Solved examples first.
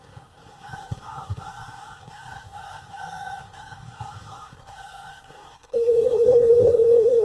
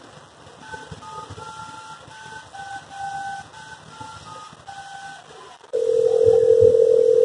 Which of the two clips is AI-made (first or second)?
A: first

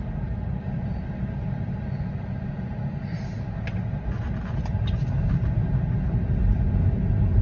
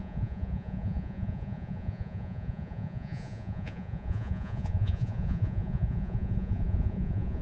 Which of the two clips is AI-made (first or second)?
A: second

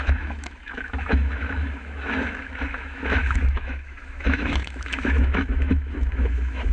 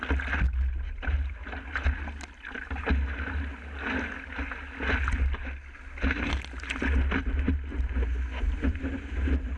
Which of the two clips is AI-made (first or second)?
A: first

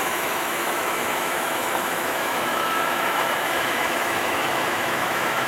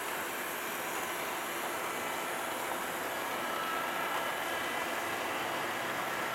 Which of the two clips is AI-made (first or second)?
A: first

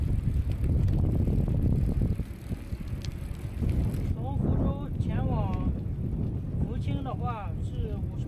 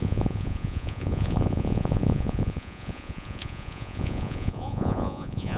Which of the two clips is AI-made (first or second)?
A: second